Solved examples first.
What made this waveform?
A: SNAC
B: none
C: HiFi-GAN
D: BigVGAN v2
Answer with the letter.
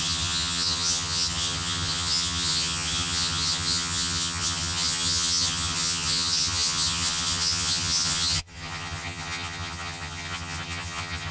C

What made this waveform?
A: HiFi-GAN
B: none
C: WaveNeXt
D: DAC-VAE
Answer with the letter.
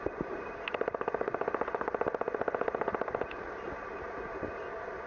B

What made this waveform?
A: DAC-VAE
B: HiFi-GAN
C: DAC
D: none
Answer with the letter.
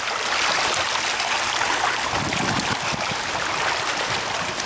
D